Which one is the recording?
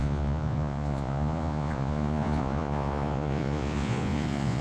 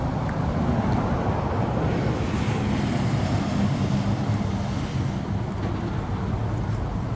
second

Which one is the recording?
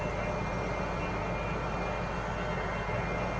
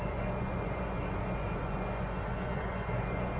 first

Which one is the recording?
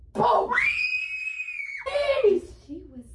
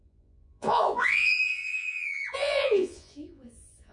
first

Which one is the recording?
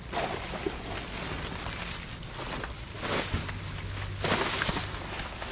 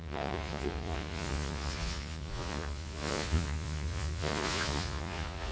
first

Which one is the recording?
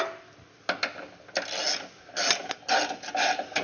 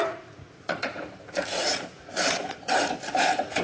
first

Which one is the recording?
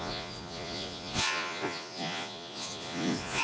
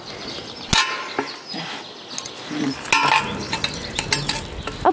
second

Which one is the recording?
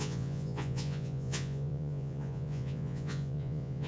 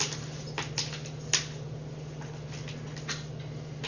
second